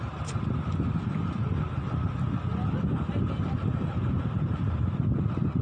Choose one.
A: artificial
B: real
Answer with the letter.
B